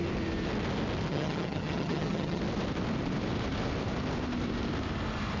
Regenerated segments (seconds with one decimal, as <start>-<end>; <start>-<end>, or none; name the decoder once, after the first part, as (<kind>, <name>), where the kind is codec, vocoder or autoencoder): 1.1-2.4 (vocoder, HiFi-GAN)